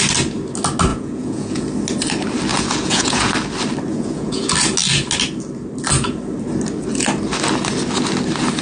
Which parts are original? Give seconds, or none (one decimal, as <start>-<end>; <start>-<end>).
0.0-0.9; 1.7-2.5; 3.3-3.9; 4.5-8.6